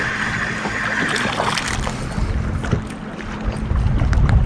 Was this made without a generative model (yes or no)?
yes